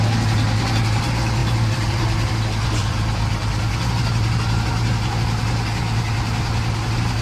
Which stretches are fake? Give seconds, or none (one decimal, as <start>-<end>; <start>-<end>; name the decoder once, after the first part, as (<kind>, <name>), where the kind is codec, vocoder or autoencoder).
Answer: 1.4-2.3 (vocoder, BigVGAN v2); 2.8-3.8